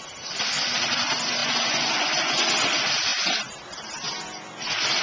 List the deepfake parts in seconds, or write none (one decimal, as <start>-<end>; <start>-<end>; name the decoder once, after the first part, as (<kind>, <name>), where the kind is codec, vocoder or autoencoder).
1.4-2.5 (vocoder, Vocos)